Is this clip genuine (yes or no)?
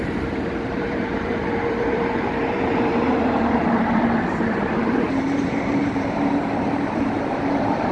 no